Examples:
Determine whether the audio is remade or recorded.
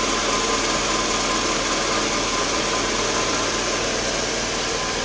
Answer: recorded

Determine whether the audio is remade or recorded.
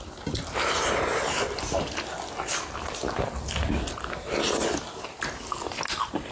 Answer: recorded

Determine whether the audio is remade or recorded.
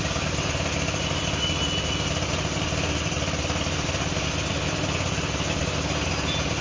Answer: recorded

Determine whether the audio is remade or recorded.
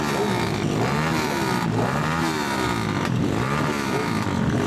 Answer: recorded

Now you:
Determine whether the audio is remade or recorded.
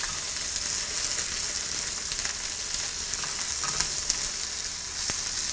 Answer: recorded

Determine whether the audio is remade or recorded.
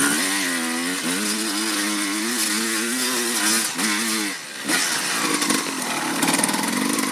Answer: recorded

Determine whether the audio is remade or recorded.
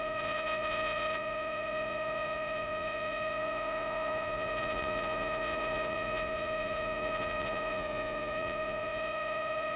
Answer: remade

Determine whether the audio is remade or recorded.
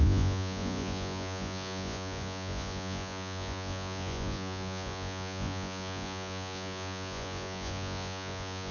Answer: remade